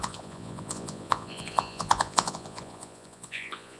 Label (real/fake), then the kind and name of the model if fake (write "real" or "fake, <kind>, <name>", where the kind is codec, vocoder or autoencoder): fake, vocoder, Vocos